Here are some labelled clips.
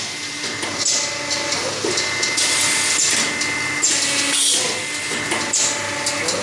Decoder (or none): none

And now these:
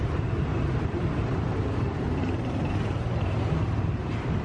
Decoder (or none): vocoder, BigVGAN v2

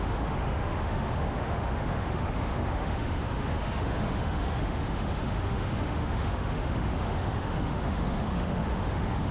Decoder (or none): autoencoder, DAC-VAE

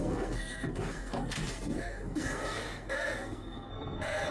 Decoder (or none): codec, SNAC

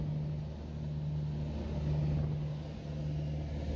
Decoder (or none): none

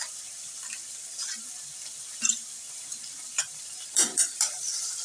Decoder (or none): vocoder, BigVGAN v2